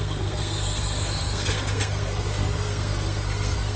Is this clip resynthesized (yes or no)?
yes